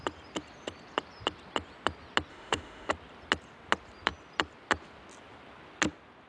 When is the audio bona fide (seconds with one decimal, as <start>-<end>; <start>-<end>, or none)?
0.0-2.3; 2.9-6.3